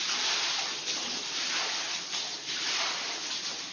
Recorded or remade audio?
recorded